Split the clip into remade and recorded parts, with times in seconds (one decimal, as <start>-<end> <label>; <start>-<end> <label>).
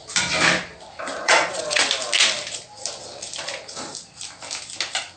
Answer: 0.0-1.2 recorded; 1.2-1.8 remade; 1.8-5.2 recorded